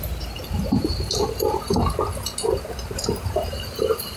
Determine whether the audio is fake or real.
real